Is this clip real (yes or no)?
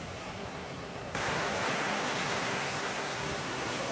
no